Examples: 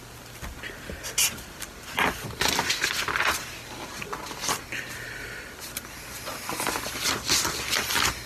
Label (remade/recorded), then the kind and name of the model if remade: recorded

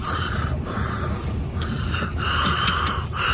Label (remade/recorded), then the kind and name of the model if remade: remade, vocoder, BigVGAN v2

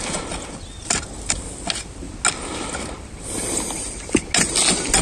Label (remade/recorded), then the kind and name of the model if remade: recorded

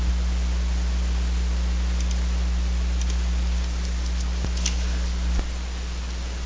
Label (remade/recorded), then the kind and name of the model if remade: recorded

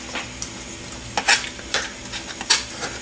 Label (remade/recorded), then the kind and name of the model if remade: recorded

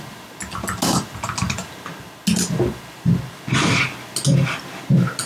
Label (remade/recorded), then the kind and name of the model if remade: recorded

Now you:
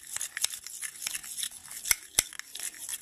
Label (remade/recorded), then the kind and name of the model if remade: recorded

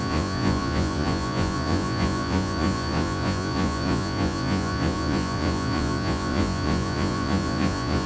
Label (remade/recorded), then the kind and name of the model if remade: remade, vocoder, Vocos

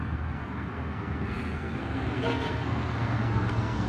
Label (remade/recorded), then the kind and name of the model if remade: remade, codec, SNAC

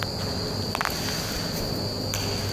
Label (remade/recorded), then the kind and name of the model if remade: recorded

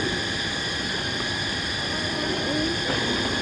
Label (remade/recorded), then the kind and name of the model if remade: recorded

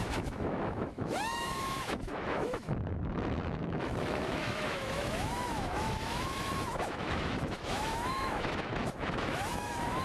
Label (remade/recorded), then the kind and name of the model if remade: remade, autoencoder, DAC-VAE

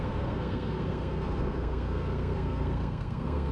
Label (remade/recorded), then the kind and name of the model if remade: remade, codec, SNAC